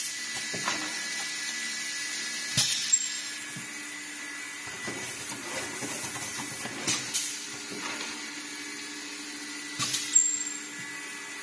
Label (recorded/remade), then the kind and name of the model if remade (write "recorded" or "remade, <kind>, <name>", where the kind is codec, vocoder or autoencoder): recorded